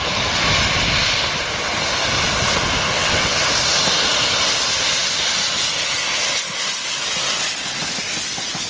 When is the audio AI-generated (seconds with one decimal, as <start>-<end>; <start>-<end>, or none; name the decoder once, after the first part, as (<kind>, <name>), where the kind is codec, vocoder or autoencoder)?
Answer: 2.9-3.4 (vocoder, WaveNeXt)